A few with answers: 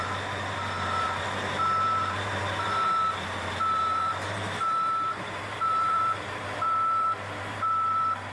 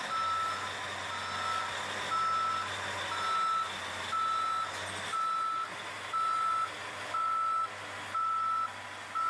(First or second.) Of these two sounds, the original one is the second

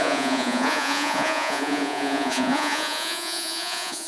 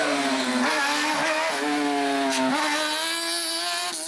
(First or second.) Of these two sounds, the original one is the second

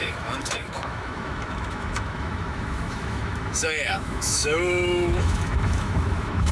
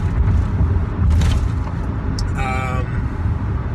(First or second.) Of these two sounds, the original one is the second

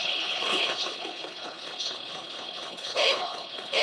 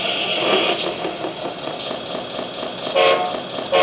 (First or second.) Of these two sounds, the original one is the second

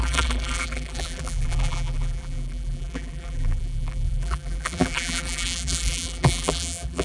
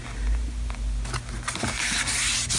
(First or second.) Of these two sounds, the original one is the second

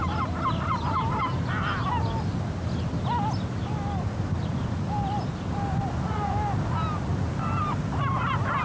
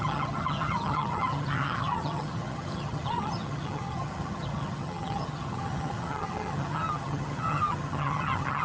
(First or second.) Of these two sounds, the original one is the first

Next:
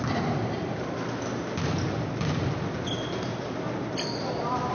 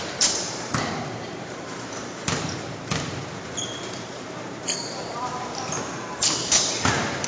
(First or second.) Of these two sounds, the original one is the first